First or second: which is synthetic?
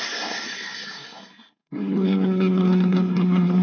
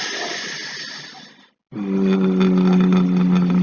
first